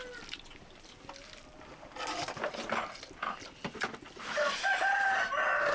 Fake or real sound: real